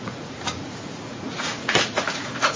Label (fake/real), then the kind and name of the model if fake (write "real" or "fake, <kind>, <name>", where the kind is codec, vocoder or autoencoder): fake, vocoder, Vocos